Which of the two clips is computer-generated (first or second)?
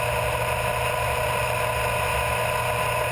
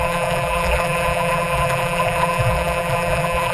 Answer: second